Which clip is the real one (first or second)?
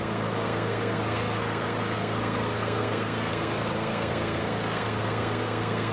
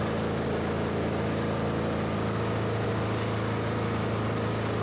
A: second